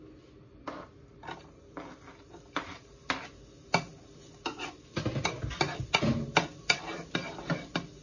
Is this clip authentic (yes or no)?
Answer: yes